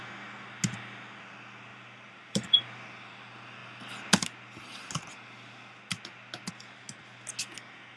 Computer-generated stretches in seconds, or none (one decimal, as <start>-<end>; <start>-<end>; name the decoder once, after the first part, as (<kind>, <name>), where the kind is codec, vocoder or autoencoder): 1.7-2.6 (vocoder, BigVGAN v2)